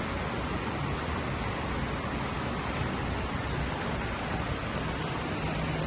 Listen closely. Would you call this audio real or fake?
real